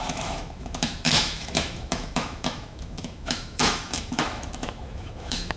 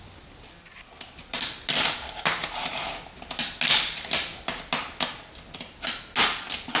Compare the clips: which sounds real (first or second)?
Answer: second